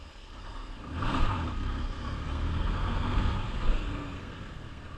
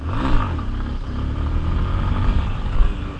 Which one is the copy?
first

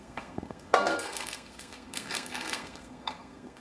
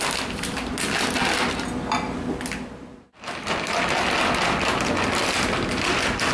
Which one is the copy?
first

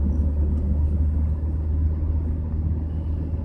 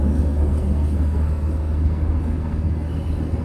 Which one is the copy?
second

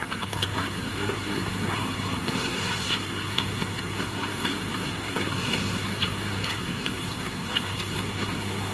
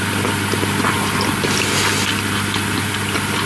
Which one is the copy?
first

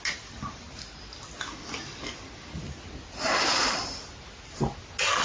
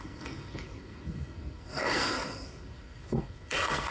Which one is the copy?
second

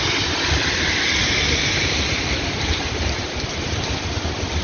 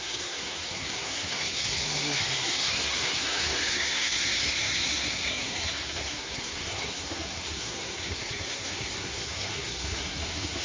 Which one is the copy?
second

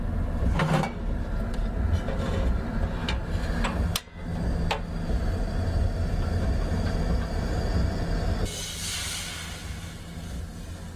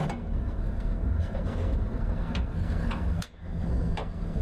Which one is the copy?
second